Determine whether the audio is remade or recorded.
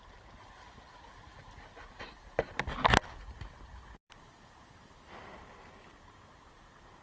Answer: recorded